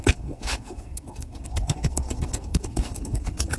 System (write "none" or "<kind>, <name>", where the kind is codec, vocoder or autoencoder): codec, SNAC